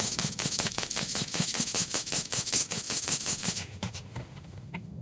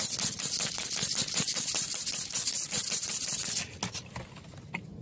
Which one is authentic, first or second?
second